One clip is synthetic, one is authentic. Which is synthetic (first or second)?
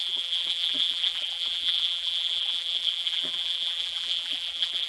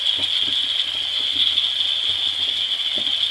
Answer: first